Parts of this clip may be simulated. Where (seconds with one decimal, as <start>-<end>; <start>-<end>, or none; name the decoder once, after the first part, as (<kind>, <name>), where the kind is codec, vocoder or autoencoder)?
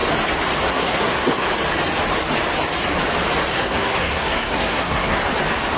0.7-1.5 (codec, SNAC); 3.5-5.2